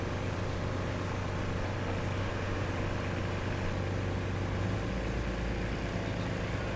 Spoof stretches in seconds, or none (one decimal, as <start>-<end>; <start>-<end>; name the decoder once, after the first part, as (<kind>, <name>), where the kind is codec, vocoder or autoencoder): 2.2-2.7 (autoencoder, DAC-VAE)

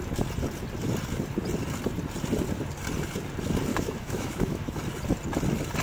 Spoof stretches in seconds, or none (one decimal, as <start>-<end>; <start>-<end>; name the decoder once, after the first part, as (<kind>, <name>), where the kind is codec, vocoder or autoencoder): 3.7-4.8 (autoencoder, DAC-VAE)

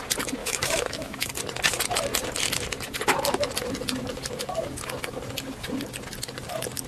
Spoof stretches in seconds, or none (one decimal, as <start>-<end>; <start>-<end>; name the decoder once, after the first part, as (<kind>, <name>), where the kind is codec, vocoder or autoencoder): 0.4-1.3 (autoencoder, DAC-VAE)

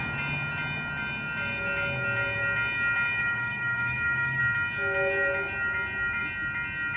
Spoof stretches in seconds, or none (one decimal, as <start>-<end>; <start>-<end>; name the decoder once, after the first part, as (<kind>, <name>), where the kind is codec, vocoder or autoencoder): 3.2-4.4 (autoencoder, DAC-VAE)